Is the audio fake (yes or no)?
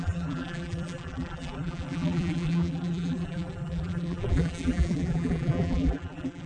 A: yes